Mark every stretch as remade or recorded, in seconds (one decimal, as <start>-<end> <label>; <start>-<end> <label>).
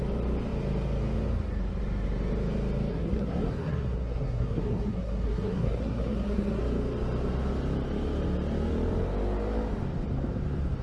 0.0-2.9 recorded; 2.9-6.6 remade; 6.6-10.8 recorded